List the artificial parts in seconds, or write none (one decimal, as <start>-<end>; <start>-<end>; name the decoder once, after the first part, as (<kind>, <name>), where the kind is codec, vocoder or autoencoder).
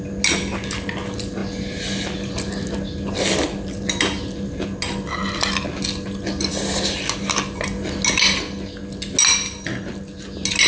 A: none